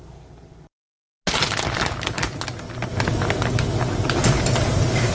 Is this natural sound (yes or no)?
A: yes